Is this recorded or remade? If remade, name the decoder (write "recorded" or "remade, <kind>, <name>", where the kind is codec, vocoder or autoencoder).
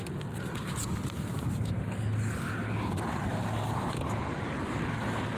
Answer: recorded